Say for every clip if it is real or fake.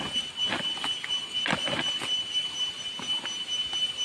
real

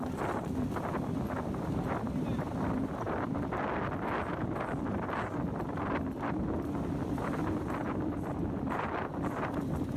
real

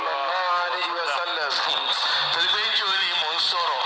real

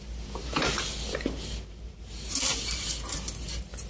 real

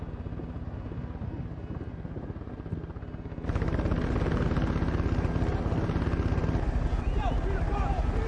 real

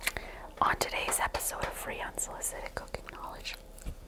fake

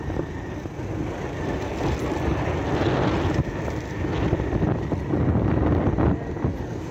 real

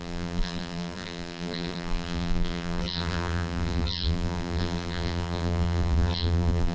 fake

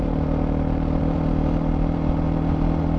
fake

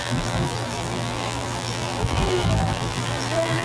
fake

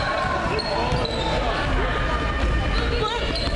real